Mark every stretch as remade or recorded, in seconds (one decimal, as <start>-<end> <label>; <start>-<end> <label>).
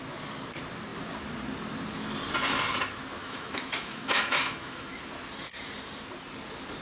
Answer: 0.0-3.2 recorded; 3.2-5.0 remade; 5.0-6.8 recorded